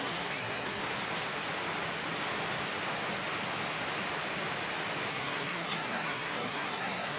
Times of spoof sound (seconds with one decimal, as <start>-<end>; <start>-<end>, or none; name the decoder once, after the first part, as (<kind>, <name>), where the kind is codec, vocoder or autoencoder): 0.0-0.8 (codec, SNAC); 5.1-7.2